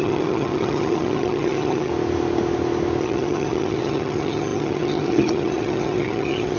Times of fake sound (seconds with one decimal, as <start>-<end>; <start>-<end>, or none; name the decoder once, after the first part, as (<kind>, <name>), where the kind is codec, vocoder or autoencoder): 0.0-1.9 (vocoder, HiFi-GAN); 3.0-6.6